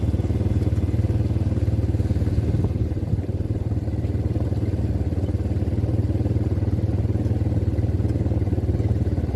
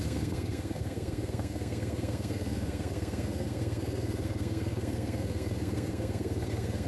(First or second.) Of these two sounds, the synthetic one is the second